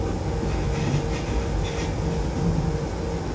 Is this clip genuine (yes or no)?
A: yes